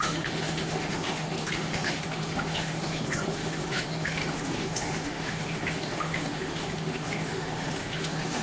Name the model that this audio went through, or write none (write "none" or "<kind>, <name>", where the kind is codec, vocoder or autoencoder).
autoencoder, DAC-VAE